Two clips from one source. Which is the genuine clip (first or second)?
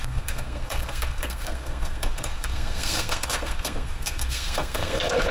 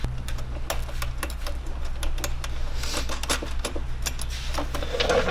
second